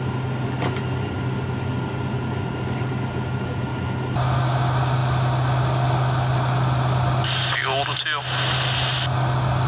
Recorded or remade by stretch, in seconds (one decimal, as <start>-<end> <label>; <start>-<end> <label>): 0.0-9.7 recorded